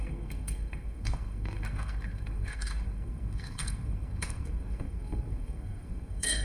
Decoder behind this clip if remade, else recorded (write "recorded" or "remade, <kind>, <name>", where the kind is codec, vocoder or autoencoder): remade, codec, SNAC